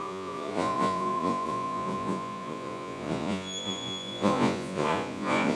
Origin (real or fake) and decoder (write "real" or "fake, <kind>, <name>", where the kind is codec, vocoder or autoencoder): fake, vocoder, Vocos